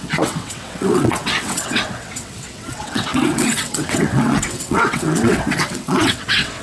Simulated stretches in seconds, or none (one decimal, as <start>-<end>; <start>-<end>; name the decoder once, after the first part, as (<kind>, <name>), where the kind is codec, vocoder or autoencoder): 0.0-6.6 (vocoder, WaveNeXt)